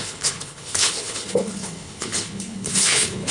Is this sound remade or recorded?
remade